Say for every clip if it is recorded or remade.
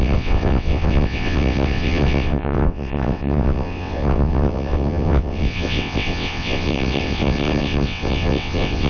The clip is remade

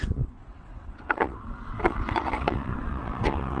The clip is remade